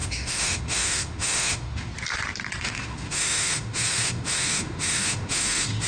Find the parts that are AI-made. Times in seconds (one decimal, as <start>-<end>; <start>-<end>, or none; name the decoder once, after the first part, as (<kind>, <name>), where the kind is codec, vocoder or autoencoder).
0.0-1.9 (autoencoder, DAC-VAE); 2.6-5.9